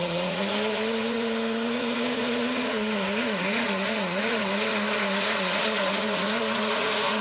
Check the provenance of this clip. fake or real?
fake